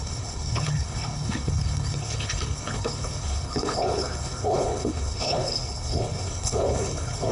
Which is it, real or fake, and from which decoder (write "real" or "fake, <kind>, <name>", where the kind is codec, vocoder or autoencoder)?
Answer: fake, codec, HILCodec